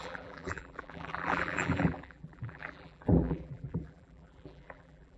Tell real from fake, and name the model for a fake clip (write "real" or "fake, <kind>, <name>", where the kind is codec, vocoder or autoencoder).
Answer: fake, vocoder, BigVGAN v2